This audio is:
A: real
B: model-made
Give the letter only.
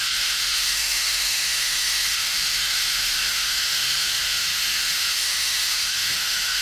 B